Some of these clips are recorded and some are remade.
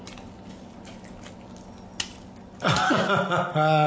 recorded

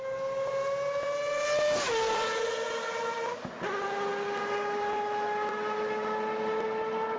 recorded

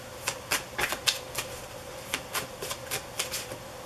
recorded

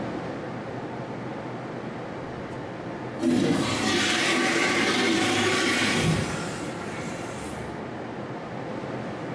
recorded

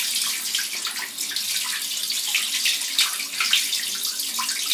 recorded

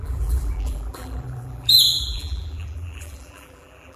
remade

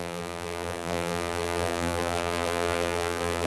remade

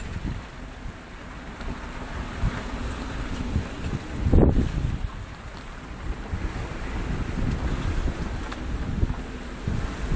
recorded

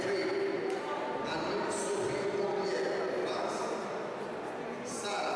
recorded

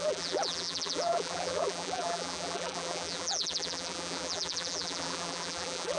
remade